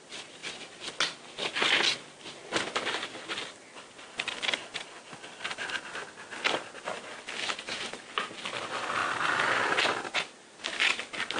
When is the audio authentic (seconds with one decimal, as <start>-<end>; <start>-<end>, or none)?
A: 0.0-11.4